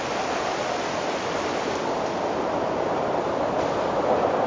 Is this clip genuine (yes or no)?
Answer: yes